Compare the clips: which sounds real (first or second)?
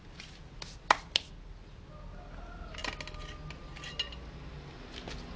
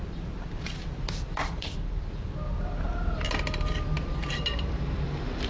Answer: first